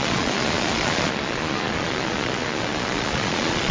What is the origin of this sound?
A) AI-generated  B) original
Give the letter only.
A